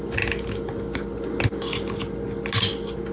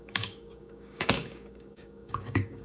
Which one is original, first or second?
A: first